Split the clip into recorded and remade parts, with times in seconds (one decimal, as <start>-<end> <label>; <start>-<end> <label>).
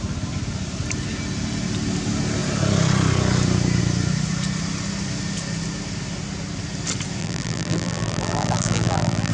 0.0-7.2 recorded; 7.2-9.3 remade